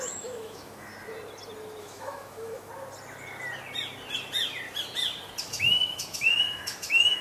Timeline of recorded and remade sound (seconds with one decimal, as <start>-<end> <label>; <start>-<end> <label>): 0.0-0.9 remade; 0.9-1.8 recorded; 1.8-2.7 remade; 2.7-5.4 recorded; 5.4-7.2 remade